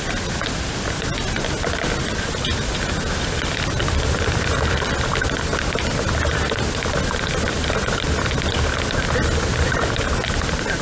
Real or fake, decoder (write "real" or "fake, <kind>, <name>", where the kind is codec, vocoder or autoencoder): real